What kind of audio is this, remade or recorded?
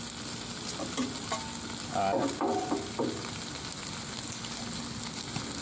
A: recorded